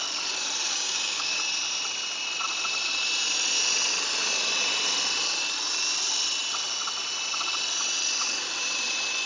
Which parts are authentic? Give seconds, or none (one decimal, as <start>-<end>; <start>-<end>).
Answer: 0.0-0.7; 1.4-9.3